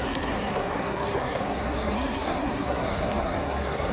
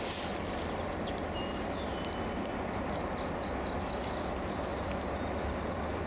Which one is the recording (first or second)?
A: second